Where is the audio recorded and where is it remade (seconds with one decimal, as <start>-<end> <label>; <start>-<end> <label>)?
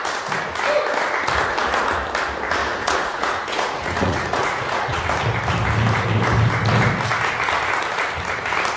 0.0-2.6 recorded; 2.6-5.0 remade; 5.0-8.8 recorded